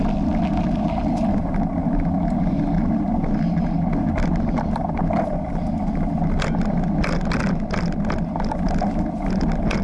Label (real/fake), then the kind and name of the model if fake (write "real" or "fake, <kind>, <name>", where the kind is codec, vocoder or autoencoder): real